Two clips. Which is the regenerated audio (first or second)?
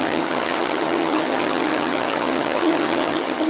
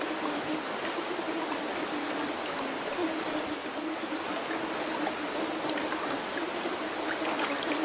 first